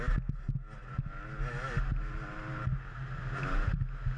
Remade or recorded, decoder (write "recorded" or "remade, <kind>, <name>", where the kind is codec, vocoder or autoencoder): recorded